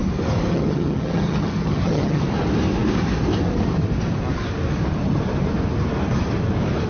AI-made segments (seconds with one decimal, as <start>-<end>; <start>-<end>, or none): 0.5-2.2